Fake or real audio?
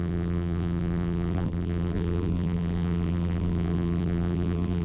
fake